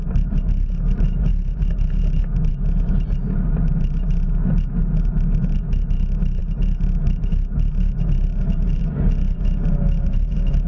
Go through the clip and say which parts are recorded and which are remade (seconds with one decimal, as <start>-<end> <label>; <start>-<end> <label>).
0.0-10.7 recorded